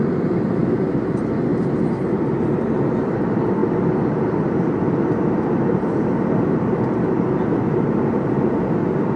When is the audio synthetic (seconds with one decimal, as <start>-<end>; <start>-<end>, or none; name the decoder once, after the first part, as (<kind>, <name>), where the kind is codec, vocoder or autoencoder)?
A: 0.0-1.5 (vocoder, BigVGAN v2); 2.2-9.2

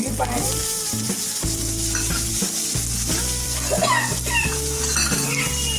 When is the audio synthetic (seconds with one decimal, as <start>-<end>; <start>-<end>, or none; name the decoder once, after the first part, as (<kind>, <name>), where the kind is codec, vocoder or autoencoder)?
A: 0.6-2.3 (vocoder, BigVGAN v2)

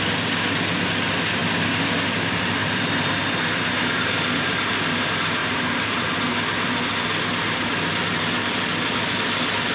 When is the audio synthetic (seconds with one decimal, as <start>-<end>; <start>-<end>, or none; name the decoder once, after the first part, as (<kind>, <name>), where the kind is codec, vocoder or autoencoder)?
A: 5.4-6.1 (vocoder, BigVGAN v2)

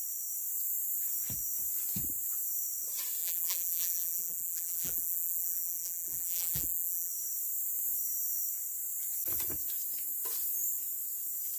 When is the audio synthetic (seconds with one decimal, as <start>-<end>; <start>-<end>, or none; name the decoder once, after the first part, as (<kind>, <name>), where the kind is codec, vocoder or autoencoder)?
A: 3.2-7.1 (vocoder, BigVGAN v2)

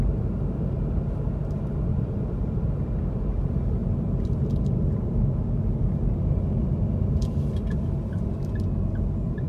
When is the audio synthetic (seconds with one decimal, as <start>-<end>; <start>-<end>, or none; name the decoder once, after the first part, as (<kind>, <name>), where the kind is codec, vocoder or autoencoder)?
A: 1.9-2.7 (vocoder, BigVGAN v2)

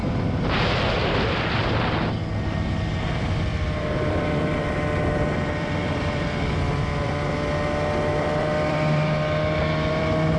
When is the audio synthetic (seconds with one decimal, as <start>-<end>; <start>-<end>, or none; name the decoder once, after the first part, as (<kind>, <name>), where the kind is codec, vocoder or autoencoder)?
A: 3.5-7.1 (vocoder, BigVGAN v2); 8.1-10.4